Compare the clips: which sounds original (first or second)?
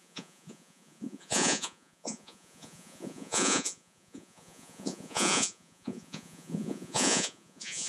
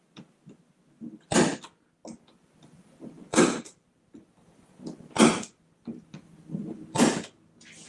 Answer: second